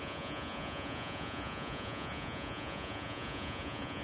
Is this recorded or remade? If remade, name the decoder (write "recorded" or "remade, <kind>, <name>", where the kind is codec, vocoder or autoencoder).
remade, vocoder, Vocos